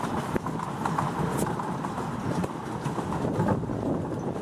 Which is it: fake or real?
real